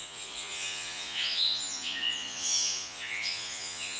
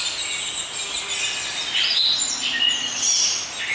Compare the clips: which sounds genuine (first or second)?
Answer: second